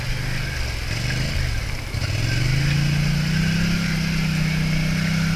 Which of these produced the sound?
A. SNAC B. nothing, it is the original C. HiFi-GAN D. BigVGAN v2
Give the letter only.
B